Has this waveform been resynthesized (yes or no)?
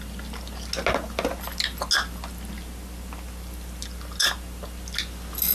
no